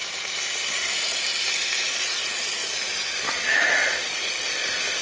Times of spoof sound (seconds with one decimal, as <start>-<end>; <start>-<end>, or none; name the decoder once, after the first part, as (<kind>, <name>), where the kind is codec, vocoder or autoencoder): none